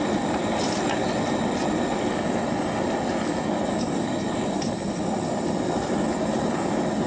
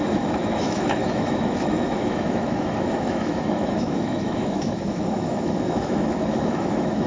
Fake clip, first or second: second